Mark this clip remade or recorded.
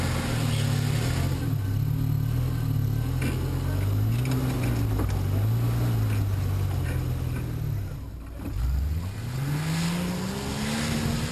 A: recorded